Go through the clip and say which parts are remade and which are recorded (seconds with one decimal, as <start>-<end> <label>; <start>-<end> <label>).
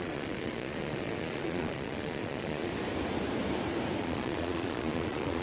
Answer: 0.0-2.7 remade; 2.7-4.0 recorded; 4.0-5.4 remade